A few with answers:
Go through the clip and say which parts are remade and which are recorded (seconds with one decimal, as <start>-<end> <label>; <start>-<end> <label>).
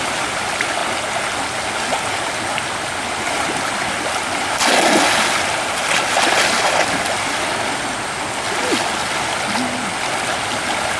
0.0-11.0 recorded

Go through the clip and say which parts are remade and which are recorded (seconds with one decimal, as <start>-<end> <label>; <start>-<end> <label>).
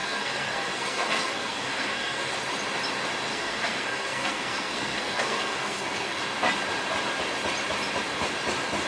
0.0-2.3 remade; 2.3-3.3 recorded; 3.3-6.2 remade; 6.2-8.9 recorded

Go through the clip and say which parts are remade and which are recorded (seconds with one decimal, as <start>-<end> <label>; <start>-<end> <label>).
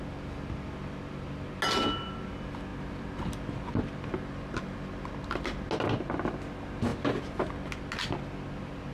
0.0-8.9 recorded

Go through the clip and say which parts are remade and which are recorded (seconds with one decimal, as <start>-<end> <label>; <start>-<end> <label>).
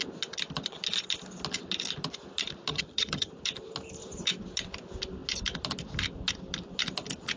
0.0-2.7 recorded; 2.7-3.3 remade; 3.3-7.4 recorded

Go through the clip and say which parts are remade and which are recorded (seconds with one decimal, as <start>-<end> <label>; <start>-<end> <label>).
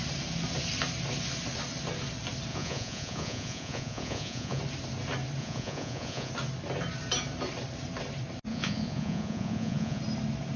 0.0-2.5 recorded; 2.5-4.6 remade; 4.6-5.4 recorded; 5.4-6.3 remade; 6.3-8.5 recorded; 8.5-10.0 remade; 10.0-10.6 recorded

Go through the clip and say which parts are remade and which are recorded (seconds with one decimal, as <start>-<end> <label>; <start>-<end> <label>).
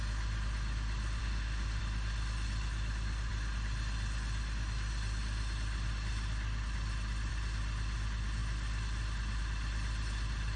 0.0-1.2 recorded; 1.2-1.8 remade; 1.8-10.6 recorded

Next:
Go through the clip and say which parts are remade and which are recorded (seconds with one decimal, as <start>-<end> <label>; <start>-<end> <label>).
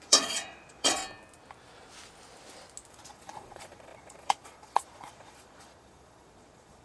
0.0-1.0 remade; 1.0-2.9 recorded; 2.9-6.8 remade